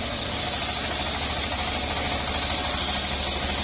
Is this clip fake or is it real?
real